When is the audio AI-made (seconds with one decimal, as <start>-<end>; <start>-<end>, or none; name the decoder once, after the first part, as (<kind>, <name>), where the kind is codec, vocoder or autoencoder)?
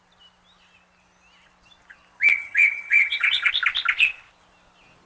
2.3-3.5 (vocoder, HiFi-GAN)